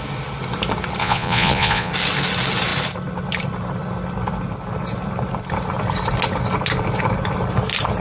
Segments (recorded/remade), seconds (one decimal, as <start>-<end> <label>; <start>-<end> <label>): 0.0-1.0 recorded; 1.0-1.9 remade; 1.9-8.0 recorded